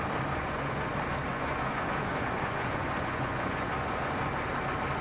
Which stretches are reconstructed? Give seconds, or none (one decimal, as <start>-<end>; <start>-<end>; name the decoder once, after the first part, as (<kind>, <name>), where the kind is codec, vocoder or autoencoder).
0.4-0.9 (vocoder, Vocos); 1.3-4.3